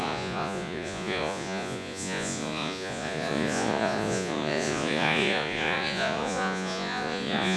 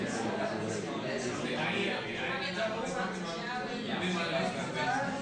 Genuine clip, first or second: second